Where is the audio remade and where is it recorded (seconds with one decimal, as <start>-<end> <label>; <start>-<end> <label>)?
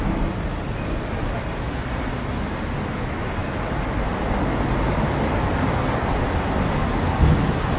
0.0-7.8 recorded